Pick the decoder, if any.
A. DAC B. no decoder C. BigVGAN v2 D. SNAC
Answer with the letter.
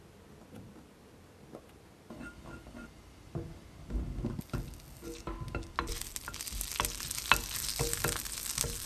B